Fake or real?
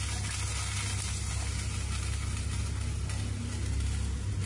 real